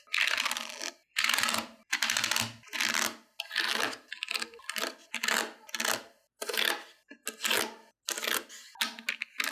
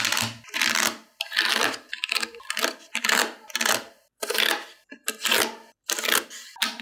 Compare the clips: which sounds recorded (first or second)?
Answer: first